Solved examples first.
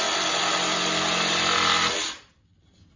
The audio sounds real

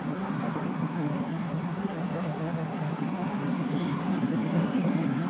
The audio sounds fake